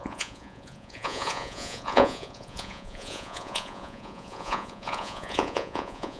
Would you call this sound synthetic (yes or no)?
yes